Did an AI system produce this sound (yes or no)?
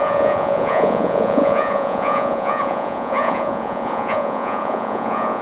yes